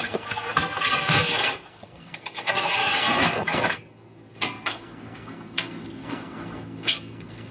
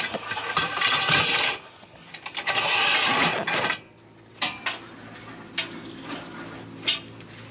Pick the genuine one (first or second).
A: second